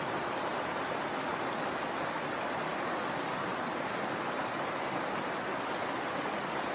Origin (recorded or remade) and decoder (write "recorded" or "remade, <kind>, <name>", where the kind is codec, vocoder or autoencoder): recorded